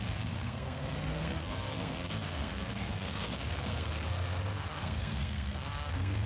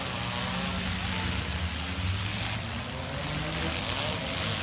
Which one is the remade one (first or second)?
first